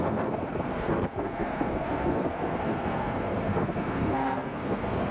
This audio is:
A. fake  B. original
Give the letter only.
A